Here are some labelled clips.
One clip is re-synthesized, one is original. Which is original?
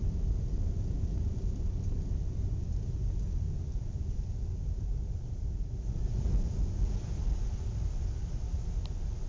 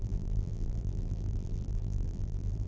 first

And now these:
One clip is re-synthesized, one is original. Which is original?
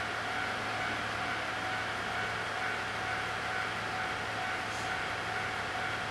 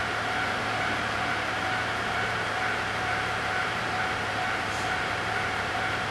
first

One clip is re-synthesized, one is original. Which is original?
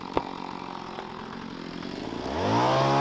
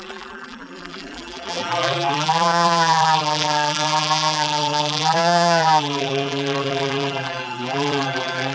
first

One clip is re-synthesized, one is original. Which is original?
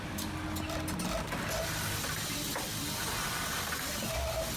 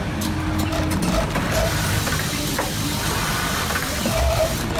first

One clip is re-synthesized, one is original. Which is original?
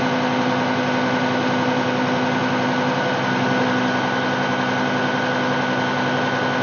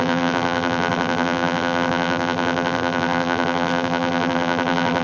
first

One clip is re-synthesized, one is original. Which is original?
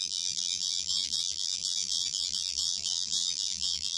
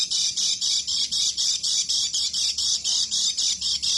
second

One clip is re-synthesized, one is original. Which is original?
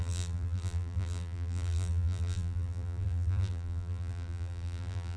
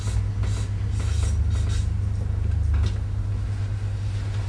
second